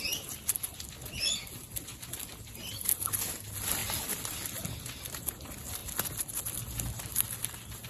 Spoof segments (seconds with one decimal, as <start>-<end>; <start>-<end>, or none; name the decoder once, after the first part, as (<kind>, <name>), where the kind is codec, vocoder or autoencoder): none